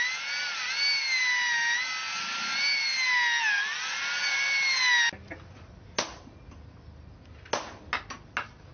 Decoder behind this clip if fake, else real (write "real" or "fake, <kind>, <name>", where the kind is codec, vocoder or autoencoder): real